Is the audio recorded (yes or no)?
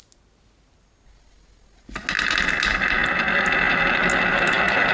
yes